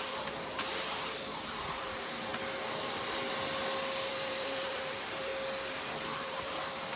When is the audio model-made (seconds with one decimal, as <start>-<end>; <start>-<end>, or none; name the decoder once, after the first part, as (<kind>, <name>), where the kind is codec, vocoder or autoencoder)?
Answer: 0.0-2.3 (vocoder, BigVGAN v2); 4.1-5.3; 5.8-7.0